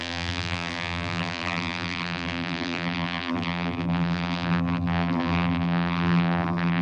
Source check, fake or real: fake